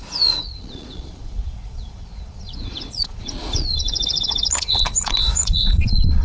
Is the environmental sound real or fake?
fake